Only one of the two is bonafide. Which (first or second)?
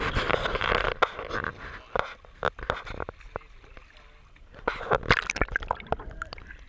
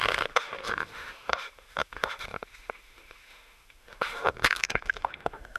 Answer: first